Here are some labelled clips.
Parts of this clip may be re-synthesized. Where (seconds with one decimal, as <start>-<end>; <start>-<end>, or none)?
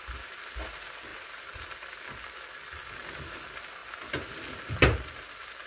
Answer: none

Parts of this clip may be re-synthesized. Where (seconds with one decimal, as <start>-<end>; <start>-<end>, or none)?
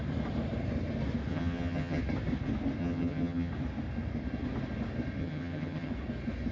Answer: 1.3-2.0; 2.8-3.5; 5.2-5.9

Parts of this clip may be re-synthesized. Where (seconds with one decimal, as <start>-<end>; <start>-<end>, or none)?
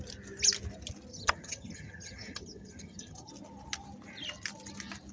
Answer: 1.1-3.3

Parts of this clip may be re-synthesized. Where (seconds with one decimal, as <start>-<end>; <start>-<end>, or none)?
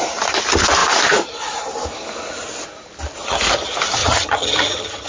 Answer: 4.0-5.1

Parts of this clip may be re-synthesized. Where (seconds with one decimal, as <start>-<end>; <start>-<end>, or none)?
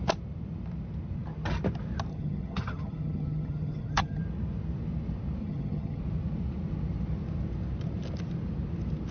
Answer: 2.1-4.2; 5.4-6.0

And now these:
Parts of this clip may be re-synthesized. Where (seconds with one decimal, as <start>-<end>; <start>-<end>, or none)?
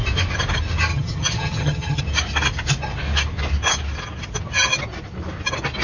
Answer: 0.9-2.0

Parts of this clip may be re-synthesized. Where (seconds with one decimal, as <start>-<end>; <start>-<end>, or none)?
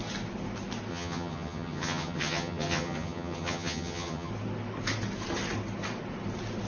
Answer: 0.9-4.3